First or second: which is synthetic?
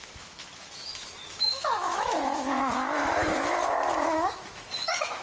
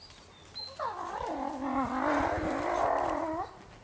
first